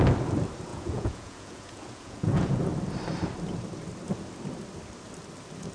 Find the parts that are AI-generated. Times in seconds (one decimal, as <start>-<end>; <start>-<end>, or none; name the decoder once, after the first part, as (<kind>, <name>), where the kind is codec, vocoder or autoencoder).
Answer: 0.7-2.6 (vocoder, Vocos)